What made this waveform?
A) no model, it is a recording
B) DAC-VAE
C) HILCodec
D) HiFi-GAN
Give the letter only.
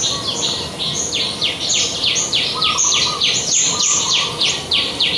A